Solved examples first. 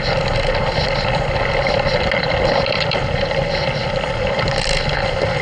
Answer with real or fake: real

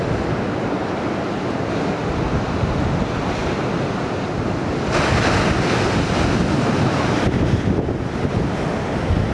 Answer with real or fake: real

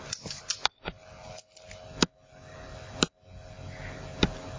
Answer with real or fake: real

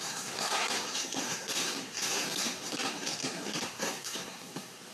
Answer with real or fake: fake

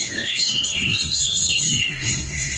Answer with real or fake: fake